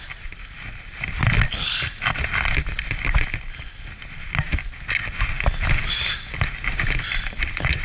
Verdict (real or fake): real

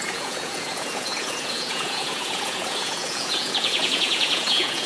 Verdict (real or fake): fake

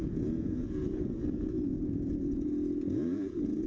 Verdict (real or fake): fake